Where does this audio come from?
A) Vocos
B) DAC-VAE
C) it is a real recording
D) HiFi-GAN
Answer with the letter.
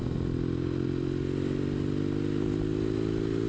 C